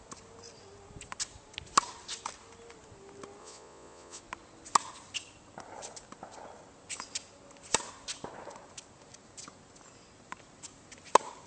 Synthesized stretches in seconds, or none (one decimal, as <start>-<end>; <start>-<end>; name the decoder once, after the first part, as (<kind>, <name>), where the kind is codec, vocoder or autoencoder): 3.4-4.2 (vocoder, Vocos)